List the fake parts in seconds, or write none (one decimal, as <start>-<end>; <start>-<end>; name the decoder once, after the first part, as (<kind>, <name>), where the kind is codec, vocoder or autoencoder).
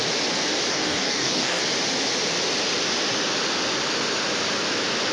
0.7-1.6 (codec, DAC)